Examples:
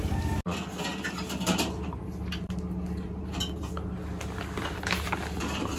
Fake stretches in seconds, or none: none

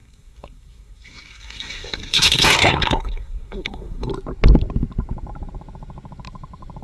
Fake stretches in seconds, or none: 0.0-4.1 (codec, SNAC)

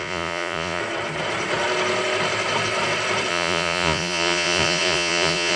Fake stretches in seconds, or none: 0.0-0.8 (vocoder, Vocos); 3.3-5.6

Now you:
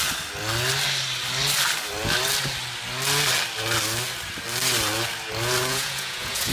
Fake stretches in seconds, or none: 5.7-6.5 (vocoder, Vocos)

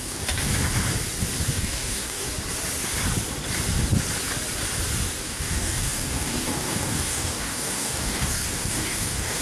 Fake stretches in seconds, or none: 0.0-0.5 (codec, DAC); 1.5-2.3; 5.2-9.4

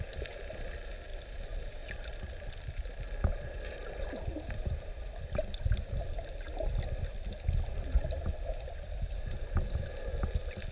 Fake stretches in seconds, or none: 1.1-5.2 (vocoder, BigVGAN v2)

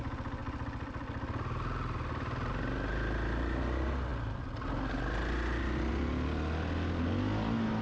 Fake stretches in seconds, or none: none